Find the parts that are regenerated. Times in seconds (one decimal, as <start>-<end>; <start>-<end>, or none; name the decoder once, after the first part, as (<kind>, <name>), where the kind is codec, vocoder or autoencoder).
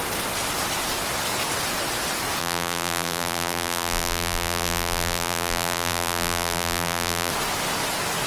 2.4-7.3 (vocoder, BigVGAN v2)